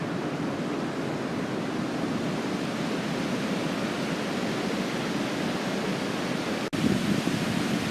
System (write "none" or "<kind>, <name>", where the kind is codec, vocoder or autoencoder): none